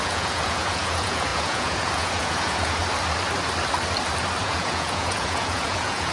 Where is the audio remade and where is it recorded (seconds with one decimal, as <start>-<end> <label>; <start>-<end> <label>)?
0.0-2.8 remade; 2.8-4.4 recorded; 4.4-6.1 remade